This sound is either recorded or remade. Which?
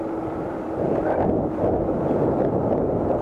recorded